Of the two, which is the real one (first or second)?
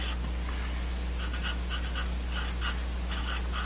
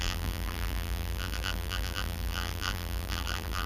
first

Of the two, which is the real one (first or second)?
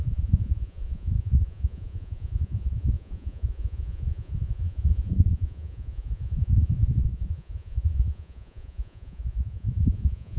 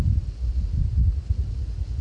second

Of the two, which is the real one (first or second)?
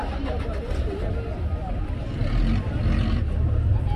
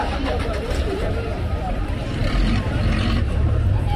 first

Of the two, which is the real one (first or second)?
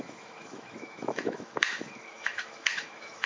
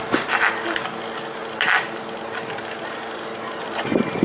second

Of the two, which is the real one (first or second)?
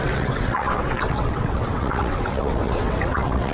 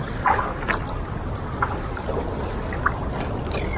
second